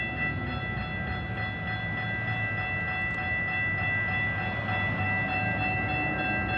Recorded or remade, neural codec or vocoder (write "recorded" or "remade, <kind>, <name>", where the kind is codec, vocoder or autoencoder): recorded